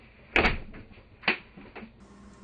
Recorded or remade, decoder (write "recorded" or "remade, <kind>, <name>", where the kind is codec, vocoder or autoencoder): recorded